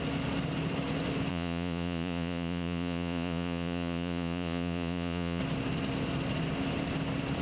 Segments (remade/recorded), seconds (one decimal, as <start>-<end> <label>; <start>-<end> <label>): 0.0-1.3 recorded; 1.3-5.4 remade; 5.4-7.4 recorded